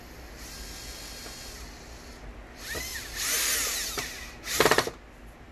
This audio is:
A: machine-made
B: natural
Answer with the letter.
B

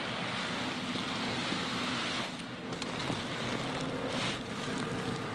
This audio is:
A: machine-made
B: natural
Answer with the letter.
B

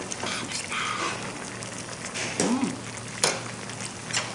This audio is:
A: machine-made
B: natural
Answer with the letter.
B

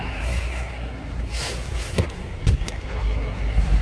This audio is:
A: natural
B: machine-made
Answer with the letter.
B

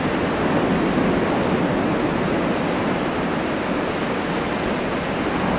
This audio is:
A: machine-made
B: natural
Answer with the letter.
B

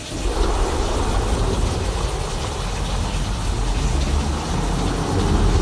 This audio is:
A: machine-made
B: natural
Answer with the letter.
B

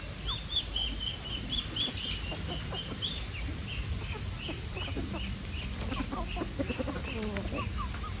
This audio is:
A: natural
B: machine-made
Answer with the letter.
A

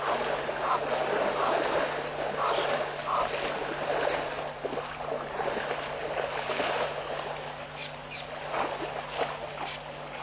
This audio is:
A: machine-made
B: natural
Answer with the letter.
B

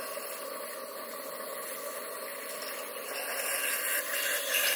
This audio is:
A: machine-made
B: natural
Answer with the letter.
B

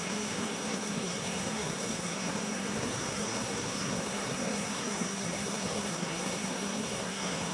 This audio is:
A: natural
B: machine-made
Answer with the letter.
B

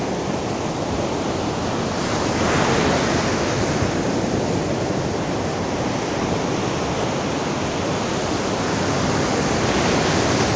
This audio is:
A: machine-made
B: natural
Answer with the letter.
B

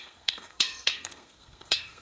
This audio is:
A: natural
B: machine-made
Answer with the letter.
B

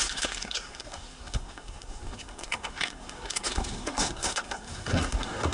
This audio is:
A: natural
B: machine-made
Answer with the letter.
B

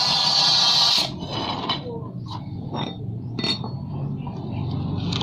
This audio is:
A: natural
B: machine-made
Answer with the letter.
A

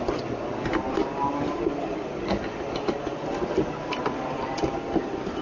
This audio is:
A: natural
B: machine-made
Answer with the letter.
A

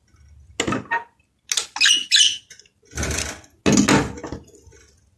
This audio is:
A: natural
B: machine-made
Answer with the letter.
A